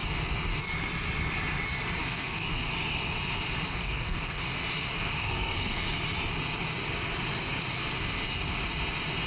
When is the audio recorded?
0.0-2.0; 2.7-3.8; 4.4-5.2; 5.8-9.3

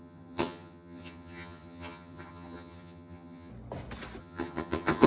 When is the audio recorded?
3.5-4.2

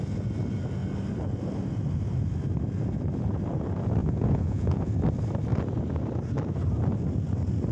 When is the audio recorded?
0.0-4.0; 4.9-7.7

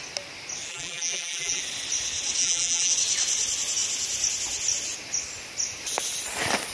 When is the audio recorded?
0.0-0.7; 1.6-2.4; 2.9-6.7

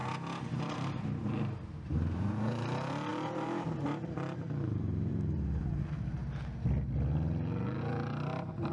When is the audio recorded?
0.0-0.6; 6.2-7.8

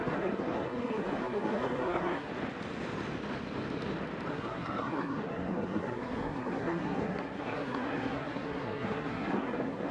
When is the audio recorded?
2.3-4.3

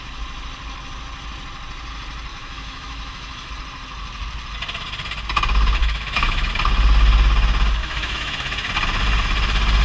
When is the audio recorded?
0.0-2.3; 3.5-5.8; 6.5-7.8; 8.7-9.8